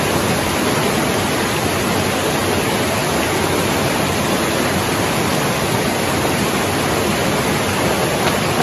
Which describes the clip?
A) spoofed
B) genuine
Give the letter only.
B